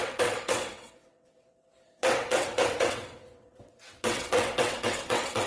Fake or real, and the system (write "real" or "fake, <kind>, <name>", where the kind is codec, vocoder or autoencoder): fake, vocoder, WaveNeXt